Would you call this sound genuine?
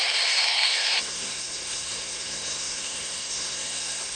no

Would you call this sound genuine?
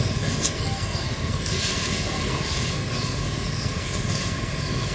no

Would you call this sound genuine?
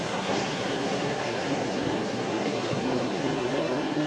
no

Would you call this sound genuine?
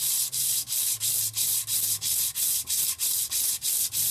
yes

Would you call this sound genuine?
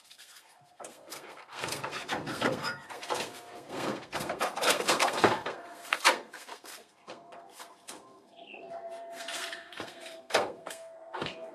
no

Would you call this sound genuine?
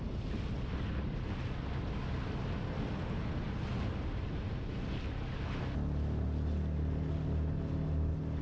yes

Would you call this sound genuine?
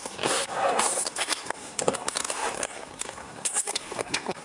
no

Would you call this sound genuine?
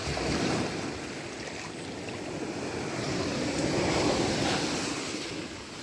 yes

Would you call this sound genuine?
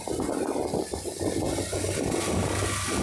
yes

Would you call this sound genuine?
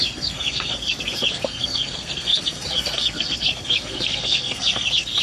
no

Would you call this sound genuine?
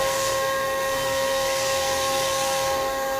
no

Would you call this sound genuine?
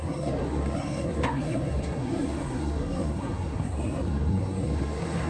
no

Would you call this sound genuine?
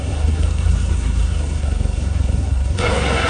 no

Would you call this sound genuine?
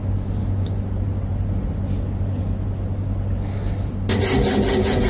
yes